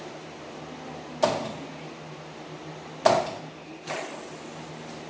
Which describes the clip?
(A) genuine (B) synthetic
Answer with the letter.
A